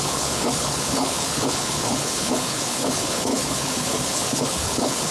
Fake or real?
fake